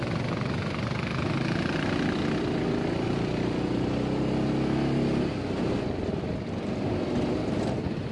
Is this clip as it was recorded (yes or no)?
yes